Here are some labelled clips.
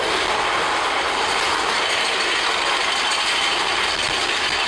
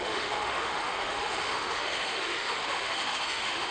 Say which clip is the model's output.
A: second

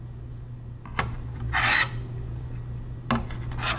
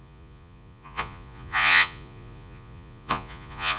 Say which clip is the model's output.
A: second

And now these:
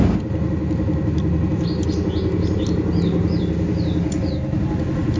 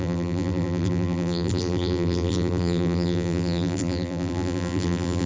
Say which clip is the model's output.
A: second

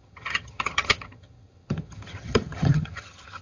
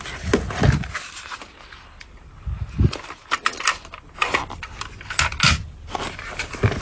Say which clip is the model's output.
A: first